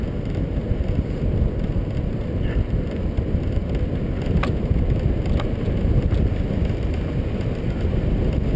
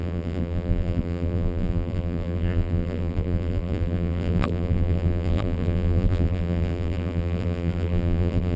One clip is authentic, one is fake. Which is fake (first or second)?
second